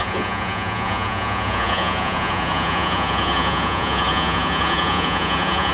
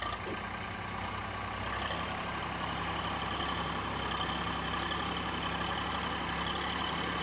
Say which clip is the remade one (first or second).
first